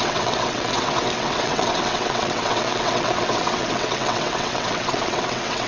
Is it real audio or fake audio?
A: fake